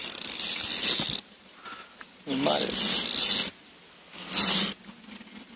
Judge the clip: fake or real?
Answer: real